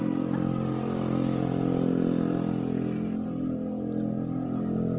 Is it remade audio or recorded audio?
recorded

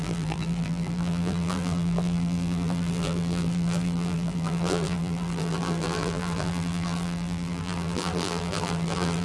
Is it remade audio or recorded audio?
remade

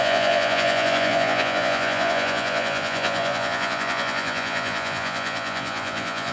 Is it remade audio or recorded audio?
remade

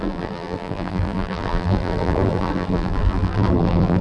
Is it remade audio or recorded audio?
remade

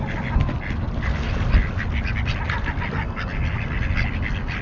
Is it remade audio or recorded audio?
recorded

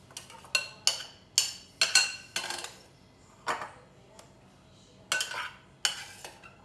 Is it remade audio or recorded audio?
recorded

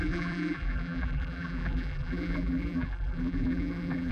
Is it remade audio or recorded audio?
remade